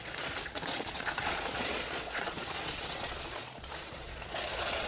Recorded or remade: remade